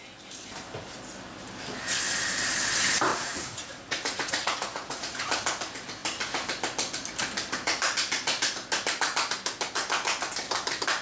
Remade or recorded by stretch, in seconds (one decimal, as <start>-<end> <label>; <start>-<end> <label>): 0.0-3.1 recorded; 3.1-5.2 remade; 5.2-11.0 recorded